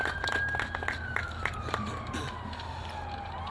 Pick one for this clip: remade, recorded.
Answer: recorded